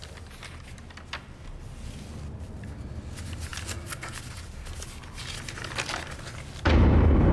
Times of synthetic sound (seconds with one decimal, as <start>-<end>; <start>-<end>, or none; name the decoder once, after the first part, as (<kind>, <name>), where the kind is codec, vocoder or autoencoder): none